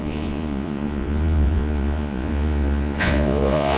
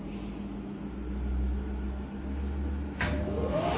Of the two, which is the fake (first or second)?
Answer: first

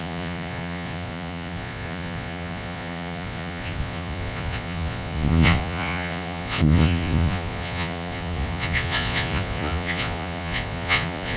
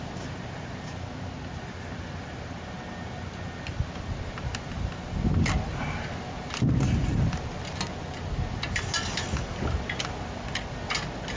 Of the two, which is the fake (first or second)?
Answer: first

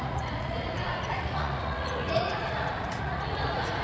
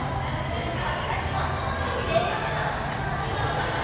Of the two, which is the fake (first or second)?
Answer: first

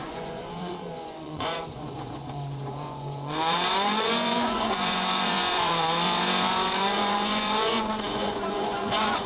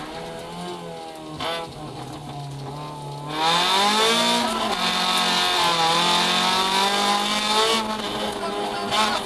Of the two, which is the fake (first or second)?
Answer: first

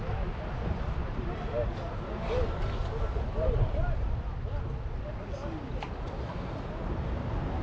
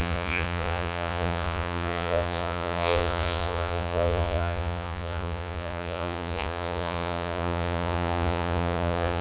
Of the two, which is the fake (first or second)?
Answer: second